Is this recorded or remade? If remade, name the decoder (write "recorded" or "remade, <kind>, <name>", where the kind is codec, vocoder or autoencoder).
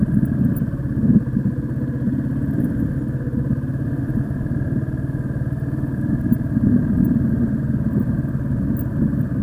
recorded